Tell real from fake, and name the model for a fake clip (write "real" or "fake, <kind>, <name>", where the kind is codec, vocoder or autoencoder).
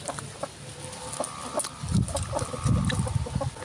real